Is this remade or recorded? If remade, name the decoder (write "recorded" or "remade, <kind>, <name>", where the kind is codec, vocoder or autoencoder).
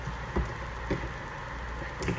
recorded